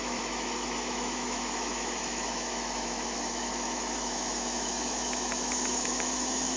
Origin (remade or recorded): remade